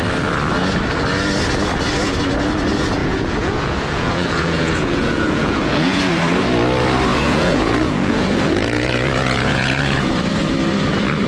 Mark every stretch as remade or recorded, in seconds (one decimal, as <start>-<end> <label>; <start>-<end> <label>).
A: 0.0-3.0 recorded; 3.0-6.1 remade; 6.1-7.1 recorded; 7.1-10.1 remade; 10.1-11.3 recorded